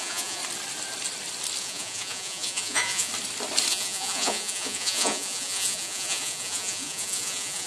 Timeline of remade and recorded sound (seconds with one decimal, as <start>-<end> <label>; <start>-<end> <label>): 0.0-0.4 remade; 0.4-1.6 recorded; 1.6-3.1 remade; 3.1-3.7 recorded; 3.7-7.7 remade